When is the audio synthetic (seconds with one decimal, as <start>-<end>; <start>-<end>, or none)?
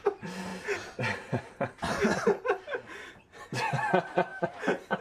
4.3-5.0